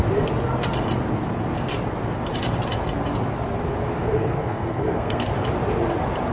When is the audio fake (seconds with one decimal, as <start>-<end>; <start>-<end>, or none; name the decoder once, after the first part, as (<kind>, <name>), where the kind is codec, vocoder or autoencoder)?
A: 4.0-5.3 (codec, SNAC)